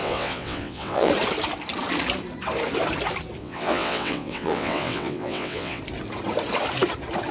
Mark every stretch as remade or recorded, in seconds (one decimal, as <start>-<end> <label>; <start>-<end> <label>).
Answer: 0.0-1.1 remade; 1.1-3.4 recorded; 3.4-5.8 remade; 5.8-7.3 recorded